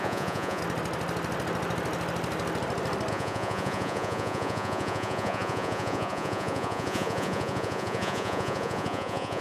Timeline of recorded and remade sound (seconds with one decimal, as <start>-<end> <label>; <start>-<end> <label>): 0.0-0.6 remade; 0.6-3.1 recorded; 3.1-9.4 remade